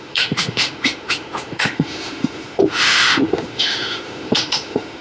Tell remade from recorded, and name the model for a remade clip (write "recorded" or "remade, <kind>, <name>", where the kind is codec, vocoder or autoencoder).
remade, autoencoder, DAC-VAE